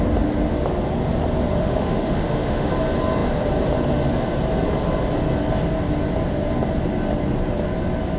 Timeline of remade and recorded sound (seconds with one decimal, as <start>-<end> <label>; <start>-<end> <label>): 0.0-1.6 recorded; 1.6-2.7 remade; 2.7-8.2 recorded